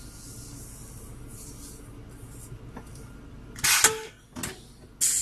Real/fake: real